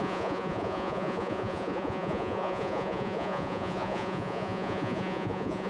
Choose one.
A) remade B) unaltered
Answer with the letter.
A